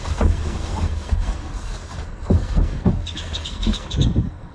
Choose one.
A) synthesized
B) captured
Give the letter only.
A